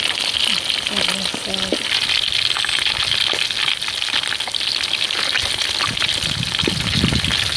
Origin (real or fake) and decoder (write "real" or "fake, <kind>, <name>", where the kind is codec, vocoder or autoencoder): real